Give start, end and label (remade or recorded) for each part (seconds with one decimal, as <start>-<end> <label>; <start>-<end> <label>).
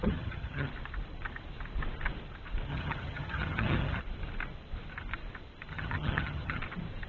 0.0-0.7 remade; 0.7-2.7 recorded; 2.7-4.0 remade; 4.0-5.7 recorded; 5.7-6.6 remade; 6.6-7.1 recorded